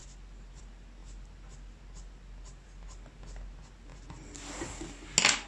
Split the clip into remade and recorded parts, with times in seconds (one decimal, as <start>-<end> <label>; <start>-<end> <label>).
0.0-5.5 recorded